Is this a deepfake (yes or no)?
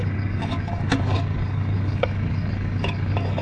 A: yes